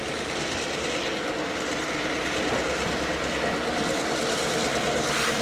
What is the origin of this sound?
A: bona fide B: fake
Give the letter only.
A